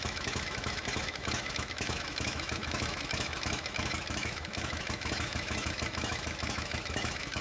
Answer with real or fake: fake